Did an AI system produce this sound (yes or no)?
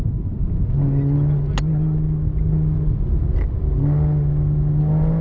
no